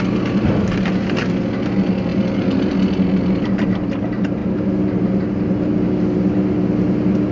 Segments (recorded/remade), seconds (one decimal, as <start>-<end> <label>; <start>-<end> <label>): 0.0-7.3 recorded